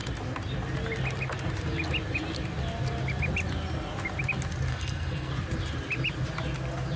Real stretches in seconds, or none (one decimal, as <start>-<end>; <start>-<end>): 0.0-4.7; 5.3-7.0